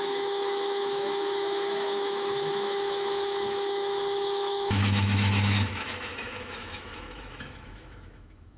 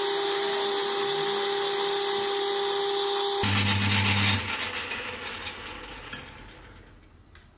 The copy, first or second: first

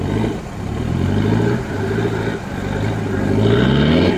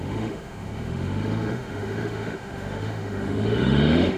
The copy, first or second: second